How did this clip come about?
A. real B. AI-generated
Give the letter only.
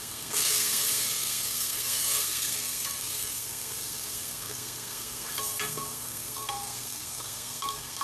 B